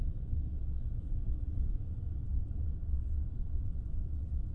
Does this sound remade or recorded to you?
remade